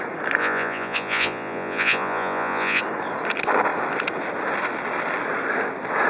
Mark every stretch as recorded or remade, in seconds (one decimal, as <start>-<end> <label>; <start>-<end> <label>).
0.0-0.4 recorded; 0.4-2.8 remade; 2.8-6.1 recorded